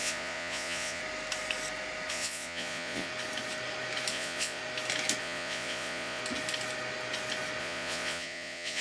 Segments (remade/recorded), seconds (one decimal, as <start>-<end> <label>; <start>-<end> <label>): 0.0-1.0 remade; 1.0-2.1 recorded; 2.1-3.1 remade; 3.1-4.1 recorded; 4.1-4.6 remade; 4.6-5.2 recorded; 5.2-6.2 remade; 6.2-7.6 recorded; 7.6-8.8 remade